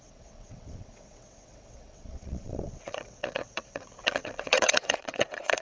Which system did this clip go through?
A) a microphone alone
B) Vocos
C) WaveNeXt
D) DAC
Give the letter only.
C